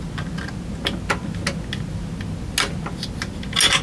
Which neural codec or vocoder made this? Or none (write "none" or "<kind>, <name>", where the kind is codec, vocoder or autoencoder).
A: none